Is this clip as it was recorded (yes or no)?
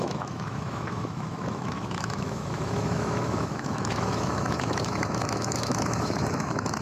no